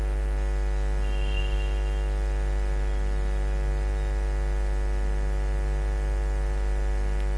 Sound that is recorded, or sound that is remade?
recorded